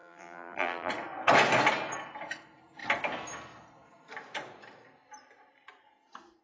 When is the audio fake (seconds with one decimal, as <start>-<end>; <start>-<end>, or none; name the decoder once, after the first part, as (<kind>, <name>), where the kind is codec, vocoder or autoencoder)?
0.0-0.9 (vocoder, BigVGAN v2)